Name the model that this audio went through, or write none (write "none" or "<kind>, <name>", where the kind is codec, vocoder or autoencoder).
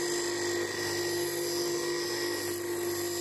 none